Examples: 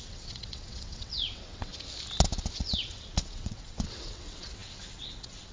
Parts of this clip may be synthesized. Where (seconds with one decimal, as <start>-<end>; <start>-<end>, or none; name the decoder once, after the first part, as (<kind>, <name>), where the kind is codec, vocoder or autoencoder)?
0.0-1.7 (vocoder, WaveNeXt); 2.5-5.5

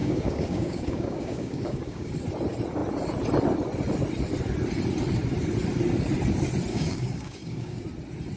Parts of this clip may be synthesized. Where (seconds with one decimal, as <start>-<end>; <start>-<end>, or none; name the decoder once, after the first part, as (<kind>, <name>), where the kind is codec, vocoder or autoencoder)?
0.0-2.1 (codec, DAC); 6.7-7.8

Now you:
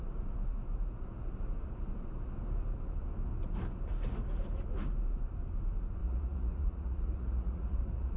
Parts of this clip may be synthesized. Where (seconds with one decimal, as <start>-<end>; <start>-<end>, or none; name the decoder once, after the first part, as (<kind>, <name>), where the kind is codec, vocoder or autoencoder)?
6.0-8.2 (vocoder, Vocos)